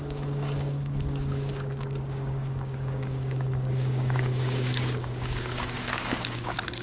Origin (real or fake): fake